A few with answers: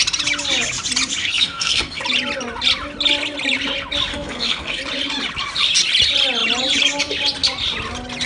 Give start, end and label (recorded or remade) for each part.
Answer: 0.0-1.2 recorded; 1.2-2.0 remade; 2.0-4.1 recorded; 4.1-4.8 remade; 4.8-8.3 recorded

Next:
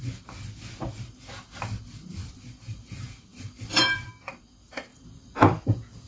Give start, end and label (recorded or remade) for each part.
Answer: 0.0-3.3 recorded; 3.3-4.4 remade; 4.4-4.9 recorded; 4.9-5.6 remade; 5.6-6.1 recorded

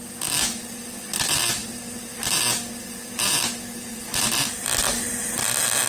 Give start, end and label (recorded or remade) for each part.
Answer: 0.0-5.9 recorded

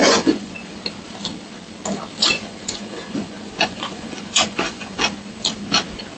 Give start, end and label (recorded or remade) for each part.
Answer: 0.0-0.7 remade; 0.7-2.2 recorded; 2.2-5.0 remade; 5.0-6.2 recorded

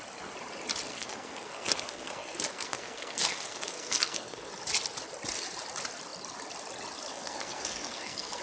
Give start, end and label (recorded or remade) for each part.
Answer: 0.0-0.9 recorded; 0.9-4.5 remade; 4.5-7.1 recorded; 7.1-8.4 remade

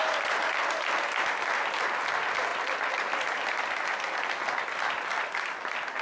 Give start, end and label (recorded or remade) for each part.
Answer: 0.0-6.0 recorded

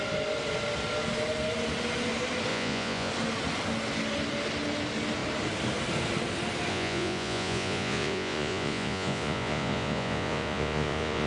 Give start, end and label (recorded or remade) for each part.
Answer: 0.0-2.5 recorded; 2.5-3.1 remade; 3.1-6.7 recorded; 6.7-11.3 remade

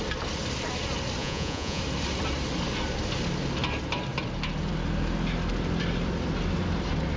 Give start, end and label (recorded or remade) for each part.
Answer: 0.0-1.2 recorded; 1.2-1.8 remade; 1.8-7.2 recorded